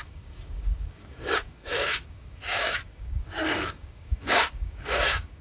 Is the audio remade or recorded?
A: remade